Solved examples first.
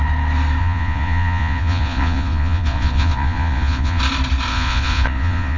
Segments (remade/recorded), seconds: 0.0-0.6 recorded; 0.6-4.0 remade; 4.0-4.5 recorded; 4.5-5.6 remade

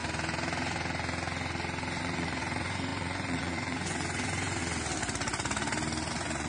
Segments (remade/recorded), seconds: 0.0-2.0 recorded; 2.0-4.6 remade; 4.6-6.1 recorded; 6.1-6.5 remade

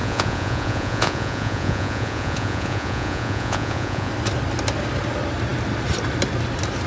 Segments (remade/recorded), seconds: 0.0-4.1 remade; 4.1-6.9 recorded

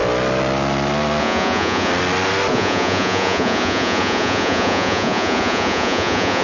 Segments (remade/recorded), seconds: 0.0-1.2 recorded; 1.2-1.9 remade; 1.9-2.5 recorded; 2.5-6.4 remade

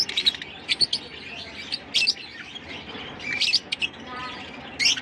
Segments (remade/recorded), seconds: 0.0-5.0 recorded